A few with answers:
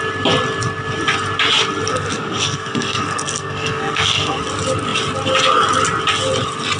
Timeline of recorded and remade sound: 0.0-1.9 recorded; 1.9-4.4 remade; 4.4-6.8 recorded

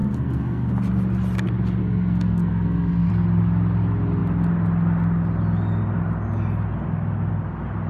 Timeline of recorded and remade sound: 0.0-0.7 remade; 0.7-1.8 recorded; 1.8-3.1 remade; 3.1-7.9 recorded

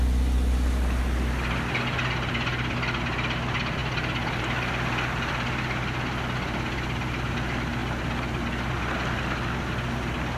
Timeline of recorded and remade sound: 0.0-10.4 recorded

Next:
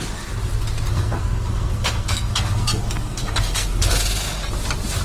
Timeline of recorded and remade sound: 0.0-0.9 recorded; 0.9-3.9 remade; 3.9-5.0 recorded